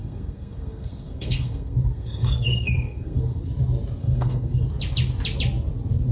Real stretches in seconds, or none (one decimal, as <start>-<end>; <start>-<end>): 3.4-4.0; 4.6-6.1